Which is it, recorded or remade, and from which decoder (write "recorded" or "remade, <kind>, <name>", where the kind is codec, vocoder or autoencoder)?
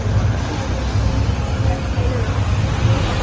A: recorded